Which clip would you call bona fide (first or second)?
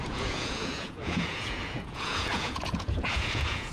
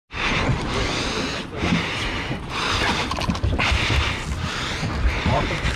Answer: second